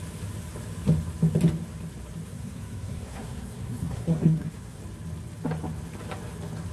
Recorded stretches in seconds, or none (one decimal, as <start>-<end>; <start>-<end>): 0.0-2.2; 4.8-6.7

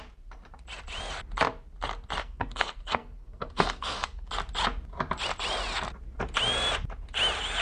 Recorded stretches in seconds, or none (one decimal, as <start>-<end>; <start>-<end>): 0.0-2.2; 4.3-7.6